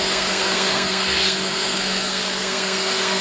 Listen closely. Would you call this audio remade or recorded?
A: remade